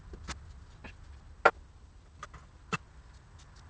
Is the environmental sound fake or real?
real